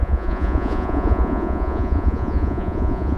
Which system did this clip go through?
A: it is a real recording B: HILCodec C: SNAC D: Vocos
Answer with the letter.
D